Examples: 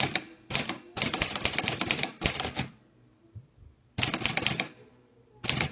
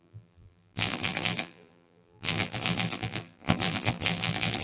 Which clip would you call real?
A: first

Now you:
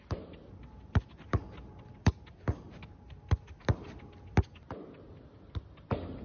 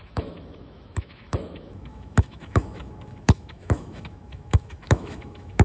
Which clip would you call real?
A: first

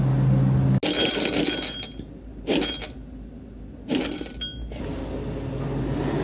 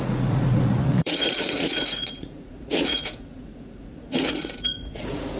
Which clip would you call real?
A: first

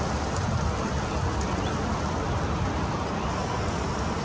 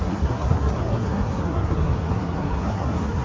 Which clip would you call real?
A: first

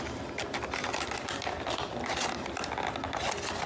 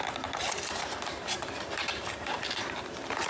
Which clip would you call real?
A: first